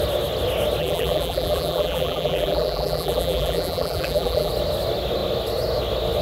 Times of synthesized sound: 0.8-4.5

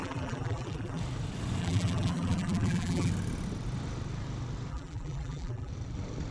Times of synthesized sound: 0.0-1.0; 1.6-3.1; 4.7-5.7